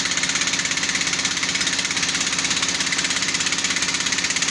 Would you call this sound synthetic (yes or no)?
no